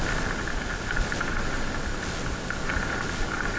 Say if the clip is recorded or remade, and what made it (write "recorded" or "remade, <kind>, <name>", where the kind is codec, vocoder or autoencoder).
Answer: recorded